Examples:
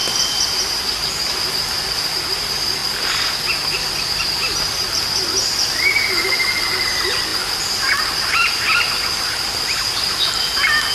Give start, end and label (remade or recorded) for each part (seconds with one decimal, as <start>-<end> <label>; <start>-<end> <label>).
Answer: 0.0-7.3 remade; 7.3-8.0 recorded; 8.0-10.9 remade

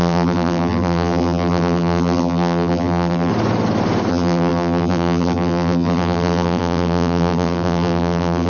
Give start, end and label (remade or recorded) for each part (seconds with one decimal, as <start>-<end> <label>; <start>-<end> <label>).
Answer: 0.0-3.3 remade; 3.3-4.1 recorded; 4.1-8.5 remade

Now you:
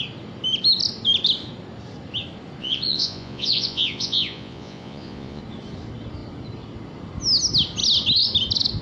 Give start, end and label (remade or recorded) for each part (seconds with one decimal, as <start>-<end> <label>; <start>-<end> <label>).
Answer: 0.0-2.6 recorded; 2.6-5.4 remade; 5.4-8.8 recorded

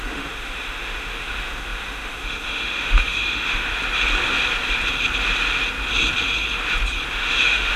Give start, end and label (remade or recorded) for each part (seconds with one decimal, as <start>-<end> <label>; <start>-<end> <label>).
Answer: 0.0-3.7 remade; 3.7-7.1 recorded; 7.1-7.8 remade

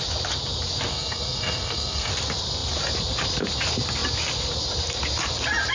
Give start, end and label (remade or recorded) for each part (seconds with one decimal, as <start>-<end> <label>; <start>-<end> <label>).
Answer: 0.0-0.9 recorded; 0.9-2.1 remade; 2.1-5.7 recorded

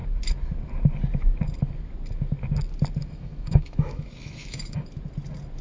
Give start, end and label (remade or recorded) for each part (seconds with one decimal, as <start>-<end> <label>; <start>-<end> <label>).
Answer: 0.0-3.0 recorded; 3.0-4.9 remade; 4.9-5.6 recorded

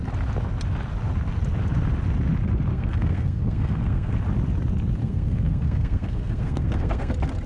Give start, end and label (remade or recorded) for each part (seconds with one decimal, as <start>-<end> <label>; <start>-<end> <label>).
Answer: 0.0-2.7 recorded; 2.7-4.1 remade; 4.1-5.0 recorded; 5.0-7.1 remade; 7.1-7.5 recorded